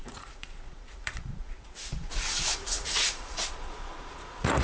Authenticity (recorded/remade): remade